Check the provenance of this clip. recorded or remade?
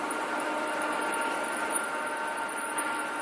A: recorded